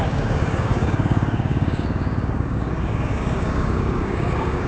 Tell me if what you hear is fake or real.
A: fake